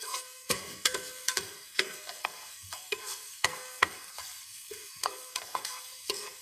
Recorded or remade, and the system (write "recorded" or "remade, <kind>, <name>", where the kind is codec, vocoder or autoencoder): remade, codec, SNAC